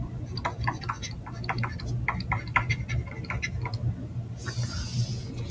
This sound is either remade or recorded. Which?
recorded